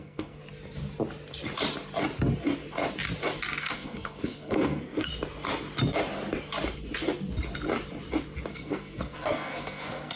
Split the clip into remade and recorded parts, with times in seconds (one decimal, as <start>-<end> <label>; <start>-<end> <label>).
0.0-0.4 remade; 0.4-3.6 recorded; 3.6-5.1 remade; 5.1-8.5 recorded; 8.5-10.2 remade